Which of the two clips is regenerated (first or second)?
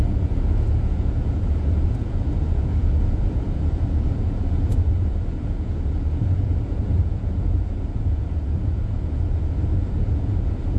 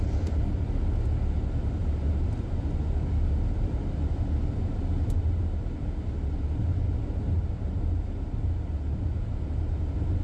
first